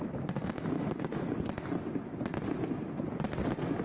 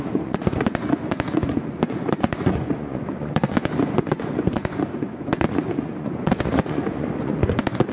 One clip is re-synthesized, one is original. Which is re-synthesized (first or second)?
second